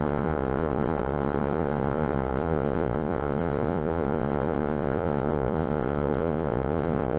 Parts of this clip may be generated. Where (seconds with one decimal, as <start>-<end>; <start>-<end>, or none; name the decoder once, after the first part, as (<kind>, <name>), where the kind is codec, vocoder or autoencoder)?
0.0-7.2 (vocoder, Vocos)